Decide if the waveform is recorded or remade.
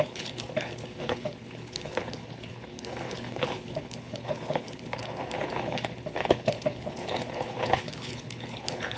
remade